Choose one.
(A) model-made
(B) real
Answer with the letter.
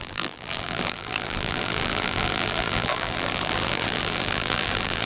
A